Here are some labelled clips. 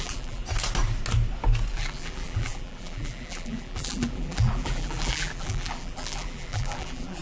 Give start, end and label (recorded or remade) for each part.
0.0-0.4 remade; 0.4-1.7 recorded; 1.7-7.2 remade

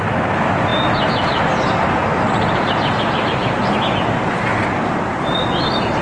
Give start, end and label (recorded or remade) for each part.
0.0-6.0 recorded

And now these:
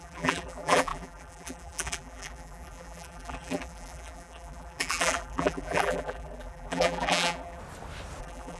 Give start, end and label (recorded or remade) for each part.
0.0-7.6 remade; 7.6-8.2 recorded; 8.2-8.6 remade